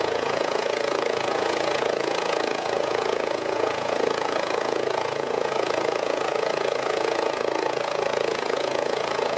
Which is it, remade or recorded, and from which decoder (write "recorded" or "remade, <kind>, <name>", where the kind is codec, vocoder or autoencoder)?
remade, vocoder, Vocos